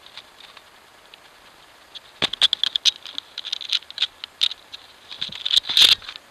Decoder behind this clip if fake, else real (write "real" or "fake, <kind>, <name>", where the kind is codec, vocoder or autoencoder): real